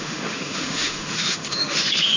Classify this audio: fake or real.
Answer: fake